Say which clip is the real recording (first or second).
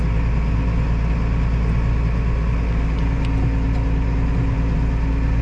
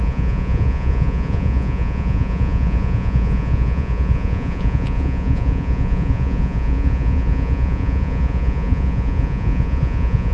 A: first